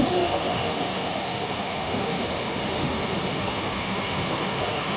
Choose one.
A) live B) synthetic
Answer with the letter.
B